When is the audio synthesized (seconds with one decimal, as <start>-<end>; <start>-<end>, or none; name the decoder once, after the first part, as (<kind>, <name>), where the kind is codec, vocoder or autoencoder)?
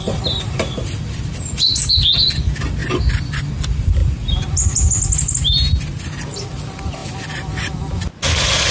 none